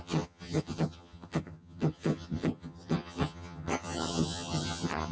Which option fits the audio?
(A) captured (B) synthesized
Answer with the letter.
B